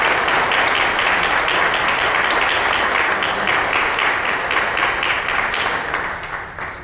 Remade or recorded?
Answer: recorded